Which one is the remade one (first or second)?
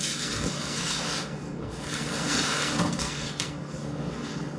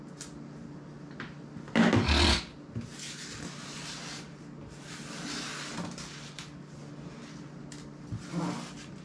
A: first